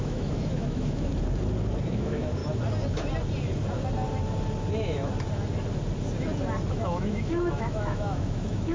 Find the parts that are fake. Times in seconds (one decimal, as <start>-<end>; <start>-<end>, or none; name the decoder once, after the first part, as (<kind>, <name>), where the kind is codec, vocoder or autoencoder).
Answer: 0.0-1.1 (autoencoder, DAC-VAE); 1.9-2.4; 6.7-8.7